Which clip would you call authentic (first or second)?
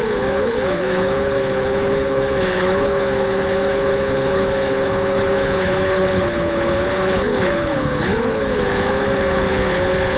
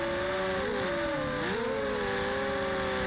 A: second